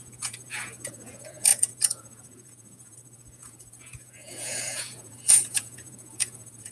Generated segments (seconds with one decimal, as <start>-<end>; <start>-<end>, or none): 0.0-6.7

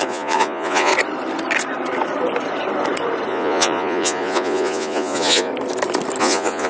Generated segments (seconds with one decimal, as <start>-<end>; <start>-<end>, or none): 0.0-0.9; 3.3-5.5; 6.2-6.7

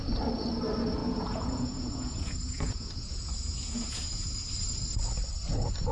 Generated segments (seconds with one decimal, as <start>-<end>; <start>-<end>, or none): 1.0-4.5

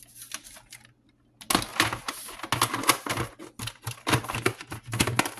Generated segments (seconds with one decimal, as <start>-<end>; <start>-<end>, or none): none

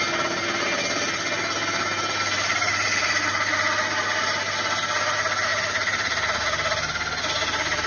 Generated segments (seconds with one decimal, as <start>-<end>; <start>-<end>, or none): none

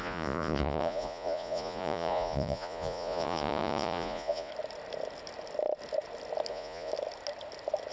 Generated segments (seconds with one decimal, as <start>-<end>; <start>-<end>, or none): 0.0-4.5; 6.5-6.9

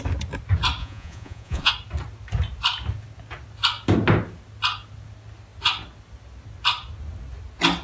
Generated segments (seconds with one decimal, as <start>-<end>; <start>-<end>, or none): 0.8-1.7